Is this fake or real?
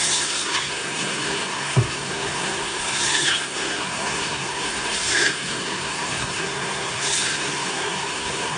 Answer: fake